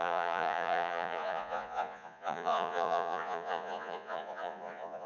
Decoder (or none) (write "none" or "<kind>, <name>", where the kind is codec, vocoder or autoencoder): vocoder, Vocos